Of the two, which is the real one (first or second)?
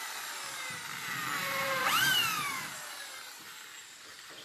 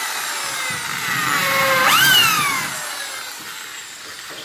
second